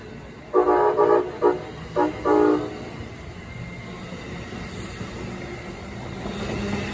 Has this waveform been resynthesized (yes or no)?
no